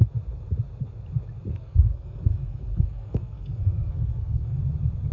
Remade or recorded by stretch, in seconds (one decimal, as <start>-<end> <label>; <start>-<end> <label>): 0.0-1.5 recorded; 1.5-4.6 remade; 4.6-5.1 recorded